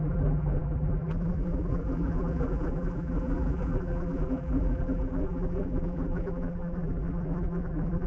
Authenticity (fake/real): fake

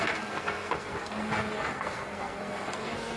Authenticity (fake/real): fake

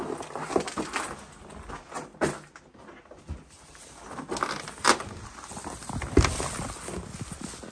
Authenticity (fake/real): real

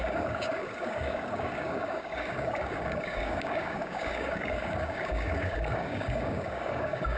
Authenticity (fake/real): fake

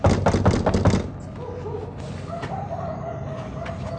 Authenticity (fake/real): real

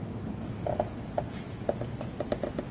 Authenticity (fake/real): real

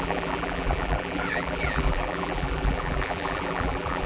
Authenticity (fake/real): fake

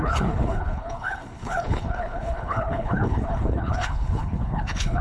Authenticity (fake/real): fake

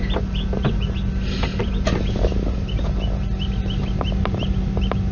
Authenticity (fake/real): real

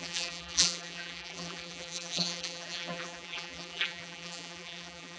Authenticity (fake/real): fake